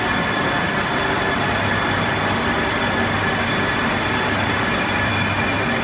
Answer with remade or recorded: recorded